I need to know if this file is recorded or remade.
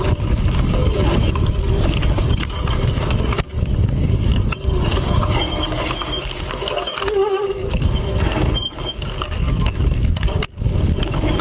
remade